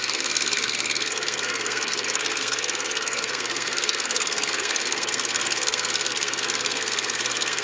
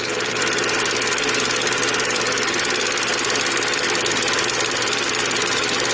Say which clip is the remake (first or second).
first